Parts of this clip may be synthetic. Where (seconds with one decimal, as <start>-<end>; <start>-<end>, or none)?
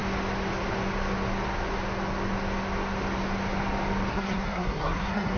4.1-5.4